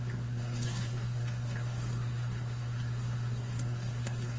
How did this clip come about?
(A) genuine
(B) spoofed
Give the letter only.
B